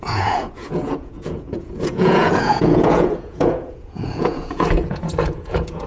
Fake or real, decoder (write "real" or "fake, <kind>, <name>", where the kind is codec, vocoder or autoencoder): fake, vocoder, Vocos